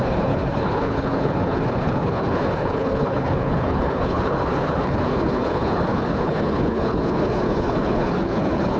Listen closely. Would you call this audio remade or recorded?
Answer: remade